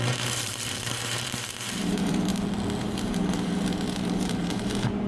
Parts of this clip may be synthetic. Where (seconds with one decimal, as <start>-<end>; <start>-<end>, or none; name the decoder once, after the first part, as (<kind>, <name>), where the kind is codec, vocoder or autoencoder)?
0.0-2.3 (vocoder, BigVGAN v2); 2.8-5.1